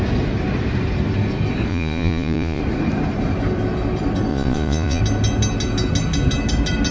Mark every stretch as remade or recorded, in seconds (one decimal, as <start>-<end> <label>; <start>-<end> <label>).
0.0-1.7 recorded; 1.7-2.6 remade; 2.6-4.3 recorded; 4.3-5.0 remade; 5.0-6.9 recorded

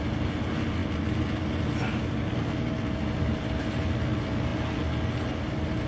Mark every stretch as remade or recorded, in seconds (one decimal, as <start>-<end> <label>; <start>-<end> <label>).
0.0-5.9 recorded

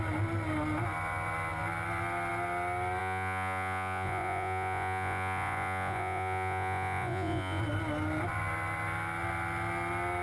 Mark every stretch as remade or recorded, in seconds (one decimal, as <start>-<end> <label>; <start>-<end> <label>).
0.0-3.0 recorded; 3.0-7.6 remade; 7.6-10.2 recorded

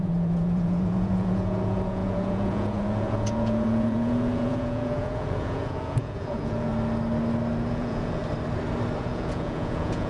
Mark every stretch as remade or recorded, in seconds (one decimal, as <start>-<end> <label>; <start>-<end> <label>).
0.0-6.7 remade; 6.7-7.7 recorded; 7.7-8.2 remade; 8.2-9.0 recorded; 9.0-10.1 remade

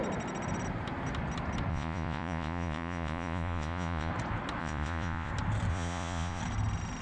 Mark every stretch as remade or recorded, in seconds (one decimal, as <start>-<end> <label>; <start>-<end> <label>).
0.0-1.7 recorded; 1.7-4.1 remade; 4.1-4.6 recorded; 4.6-5.3 remade; 5.3-5.7 recorded; 5.7-6.4 remade; 6.4-7.0 recorded

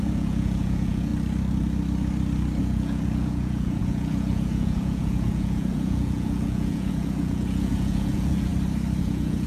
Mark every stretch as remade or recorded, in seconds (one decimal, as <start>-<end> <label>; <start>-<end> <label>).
0.0-1.1 remade; 1.1-2.6 recorded; 2.6-8.5 remade; 8.5-9.0 recorded; 9.0-9.5 remade

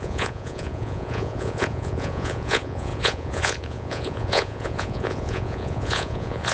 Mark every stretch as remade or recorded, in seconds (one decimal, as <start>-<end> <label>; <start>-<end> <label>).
0.0-6.5 remade